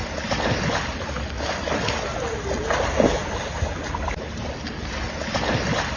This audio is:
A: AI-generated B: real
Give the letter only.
B